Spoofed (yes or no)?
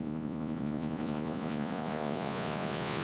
yes